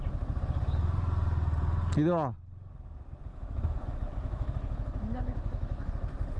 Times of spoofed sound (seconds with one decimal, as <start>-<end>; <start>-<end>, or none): 3.3-5.9